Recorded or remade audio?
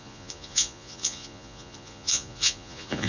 remade